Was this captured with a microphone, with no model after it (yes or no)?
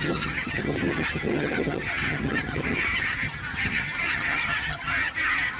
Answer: no